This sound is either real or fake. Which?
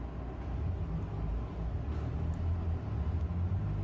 real